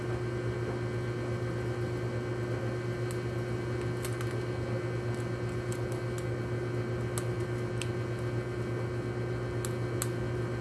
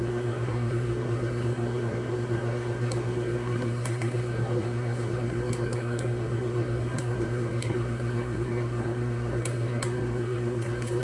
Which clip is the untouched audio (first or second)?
first